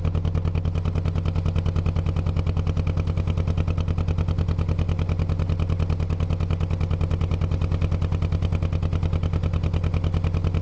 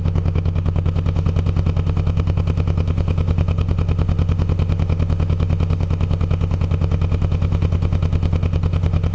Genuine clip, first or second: first